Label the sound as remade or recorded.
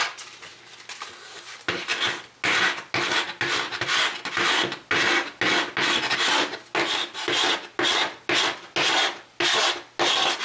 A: recorded